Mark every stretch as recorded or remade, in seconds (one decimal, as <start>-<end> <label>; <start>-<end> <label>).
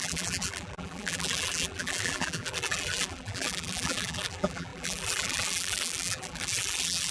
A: 0.0-7.1 remade